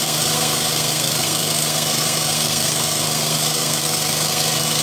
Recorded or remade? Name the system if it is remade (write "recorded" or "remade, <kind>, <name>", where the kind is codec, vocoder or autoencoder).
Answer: remade, codec, SNAC